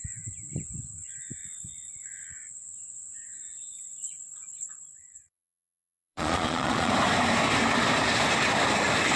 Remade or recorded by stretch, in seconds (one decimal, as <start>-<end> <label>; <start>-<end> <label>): 0.0-1.4 recorded; 1.4-2.4 remade; 2.4-3.7 recorded; 3.7-6.9 remade; 6.9-9.2 recorded